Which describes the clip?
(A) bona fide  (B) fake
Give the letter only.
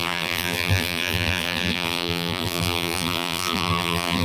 B